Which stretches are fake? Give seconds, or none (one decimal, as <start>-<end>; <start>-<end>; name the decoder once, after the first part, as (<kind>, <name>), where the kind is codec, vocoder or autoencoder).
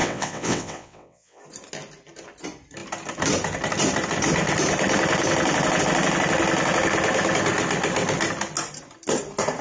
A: 0.0-1.4 (vocoder, WaveNeXt)